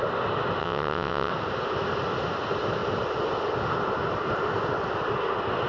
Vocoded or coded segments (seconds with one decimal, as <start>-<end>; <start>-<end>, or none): 0.6-1.3